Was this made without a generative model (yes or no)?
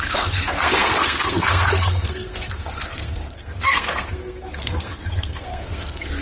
no